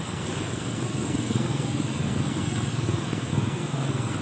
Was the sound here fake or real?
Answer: fake